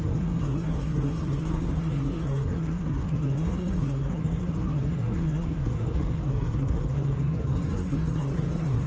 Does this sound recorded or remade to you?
remade